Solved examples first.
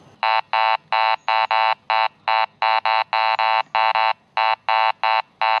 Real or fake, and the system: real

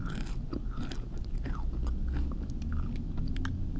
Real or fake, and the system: real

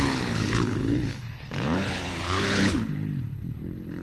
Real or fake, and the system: fake, codec, HILCodec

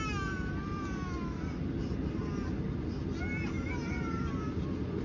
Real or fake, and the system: real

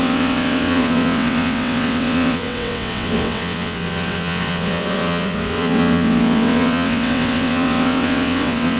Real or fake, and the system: fake, vocoder, WaveNeXt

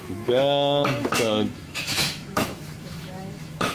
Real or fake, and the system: fake, autoencoder, DAC-VAE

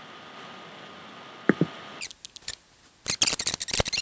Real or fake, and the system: real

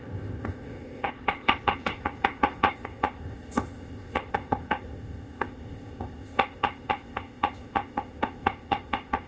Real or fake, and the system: fake, codec, ZipCodec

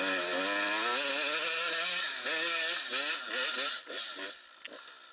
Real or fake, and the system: real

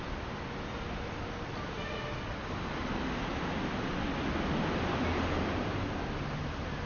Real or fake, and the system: real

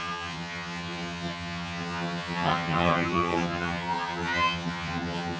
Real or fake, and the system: fake, vocoder, HiFi-GAN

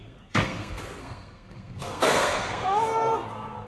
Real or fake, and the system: fake, codec, SNAC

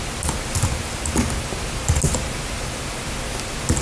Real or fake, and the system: real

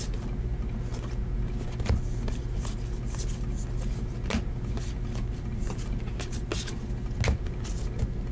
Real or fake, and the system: real